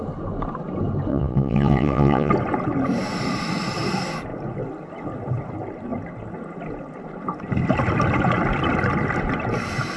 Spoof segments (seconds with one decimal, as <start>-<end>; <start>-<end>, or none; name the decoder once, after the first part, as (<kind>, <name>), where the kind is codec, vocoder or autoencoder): 1.1-2.3 (vocoder, WaveNeXt)